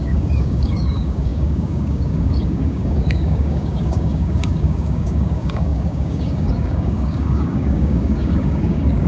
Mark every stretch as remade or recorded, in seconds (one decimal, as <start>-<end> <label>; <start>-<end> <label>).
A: 0.0-9.1 remade